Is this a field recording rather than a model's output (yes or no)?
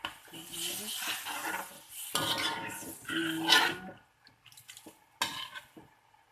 yes